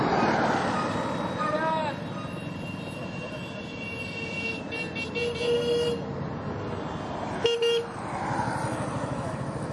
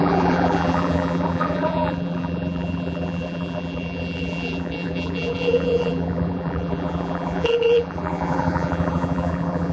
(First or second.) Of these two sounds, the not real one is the second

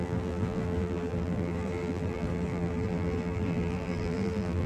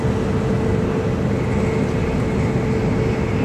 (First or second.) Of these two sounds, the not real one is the first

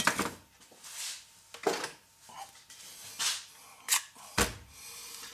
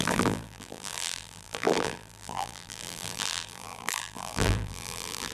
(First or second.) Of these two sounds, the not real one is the second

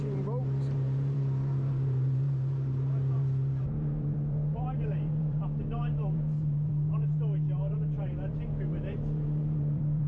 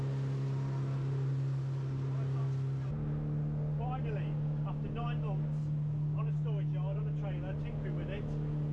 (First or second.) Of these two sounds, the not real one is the first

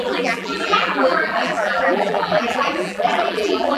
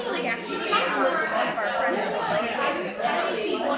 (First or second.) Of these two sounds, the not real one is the first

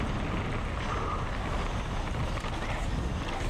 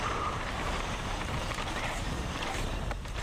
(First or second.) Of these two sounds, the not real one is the second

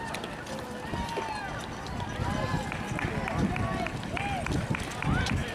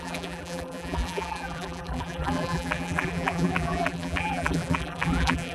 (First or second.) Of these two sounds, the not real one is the second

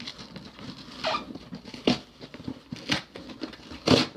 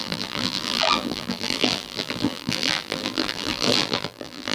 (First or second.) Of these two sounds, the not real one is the second